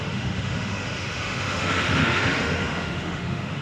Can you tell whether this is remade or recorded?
remade